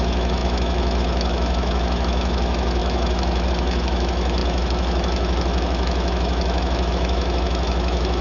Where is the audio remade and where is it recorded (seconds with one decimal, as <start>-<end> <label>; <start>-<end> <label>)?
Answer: 0.0-8.2 remade